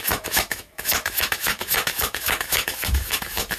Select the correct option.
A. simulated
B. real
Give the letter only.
A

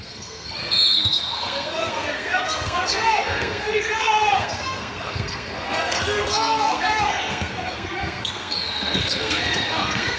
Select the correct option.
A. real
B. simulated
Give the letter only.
B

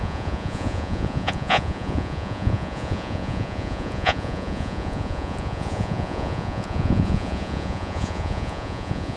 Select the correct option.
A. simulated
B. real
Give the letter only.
A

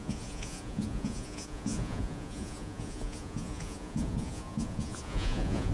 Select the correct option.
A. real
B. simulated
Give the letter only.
B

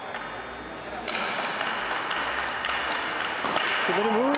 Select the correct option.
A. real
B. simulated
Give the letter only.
A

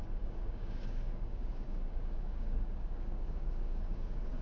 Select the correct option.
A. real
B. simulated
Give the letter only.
B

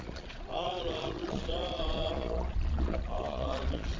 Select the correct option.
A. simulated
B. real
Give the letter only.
A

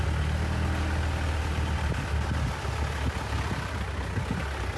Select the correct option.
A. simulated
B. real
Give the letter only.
B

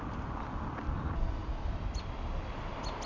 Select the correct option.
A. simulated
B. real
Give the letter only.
B